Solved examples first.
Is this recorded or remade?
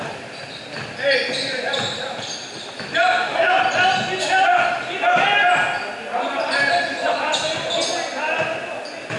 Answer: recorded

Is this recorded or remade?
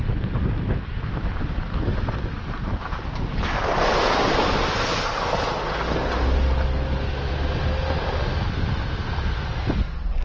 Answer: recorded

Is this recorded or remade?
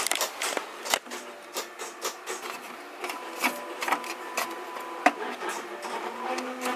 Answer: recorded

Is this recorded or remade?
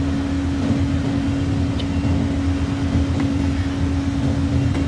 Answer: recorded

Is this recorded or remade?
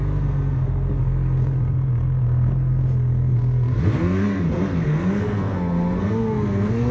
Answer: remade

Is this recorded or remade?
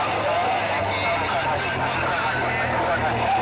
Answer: recorded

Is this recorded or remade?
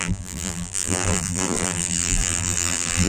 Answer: remade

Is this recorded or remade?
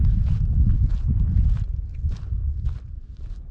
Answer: recorded